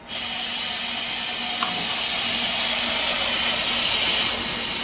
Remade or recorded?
recorded